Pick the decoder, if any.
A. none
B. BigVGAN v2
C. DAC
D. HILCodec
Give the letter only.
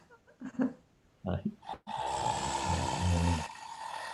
A